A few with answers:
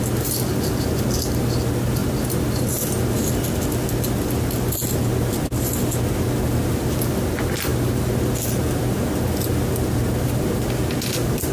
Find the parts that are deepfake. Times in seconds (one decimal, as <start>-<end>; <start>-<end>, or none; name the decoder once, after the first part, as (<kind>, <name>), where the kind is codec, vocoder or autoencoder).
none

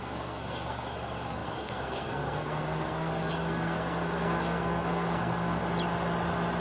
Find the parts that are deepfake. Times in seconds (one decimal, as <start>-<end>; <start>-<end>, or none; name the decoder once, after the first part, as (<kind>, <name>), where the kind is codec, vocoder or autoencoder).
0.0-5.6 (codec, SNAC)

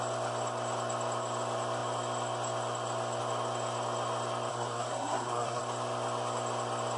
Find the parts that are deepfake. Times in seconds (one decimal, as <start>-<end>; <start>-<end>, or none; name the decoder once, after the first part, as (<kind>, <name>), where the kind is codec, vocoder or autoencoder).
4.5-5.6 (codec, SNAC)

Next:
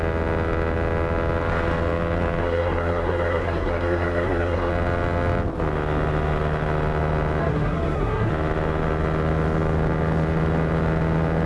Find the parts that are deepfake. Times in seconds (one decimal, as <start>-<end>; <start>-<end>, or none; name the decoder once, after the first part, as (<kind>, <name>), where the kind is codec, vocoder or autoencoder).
2.4-4.7 (codec, SNAC); 7.4-8.3